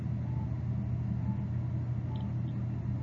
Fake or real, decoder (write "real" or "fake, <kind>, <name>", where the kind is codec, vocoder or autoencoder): real